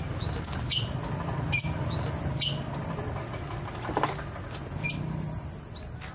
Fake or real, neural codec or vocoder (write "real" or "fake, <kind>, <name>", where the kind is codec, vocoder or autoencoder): real